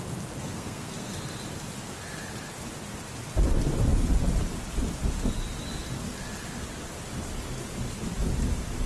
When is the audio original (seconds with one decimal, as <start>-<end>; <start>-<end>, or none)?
0.0-0.4; 1.1-8.9